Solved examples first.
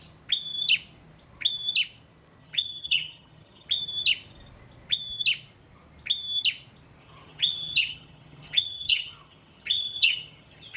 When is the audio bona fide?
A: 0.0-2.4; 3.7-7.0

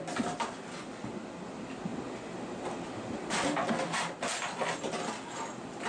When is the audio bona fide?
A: 0.0-5.9

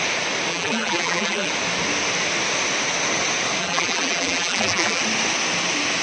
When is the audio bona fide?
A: 0.0-0.5; 1.5-3.6; 5.0-6.0